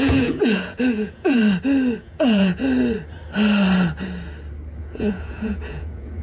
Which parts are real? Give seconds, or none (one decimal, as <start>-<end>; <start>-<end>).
1.4-2.0; 2.6-4.8